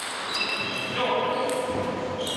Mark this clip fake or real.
real